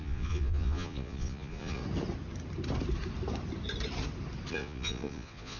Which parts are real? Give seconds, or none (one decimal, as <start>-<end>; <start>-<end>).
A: 1.8-4.5